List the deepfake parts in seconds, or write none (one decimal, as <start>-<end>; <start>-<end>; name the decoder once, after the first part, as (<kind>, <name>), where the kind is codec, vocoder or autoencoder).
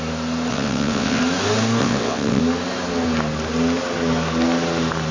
0.5-1.2 (vocoder, WaveNeXt); 1.8-2.4